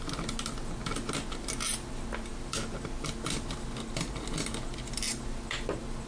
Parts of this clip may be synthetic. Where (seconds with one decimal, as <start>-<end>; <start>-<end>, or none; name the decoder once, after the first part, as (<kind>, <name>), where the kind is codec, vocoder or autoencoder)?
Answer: none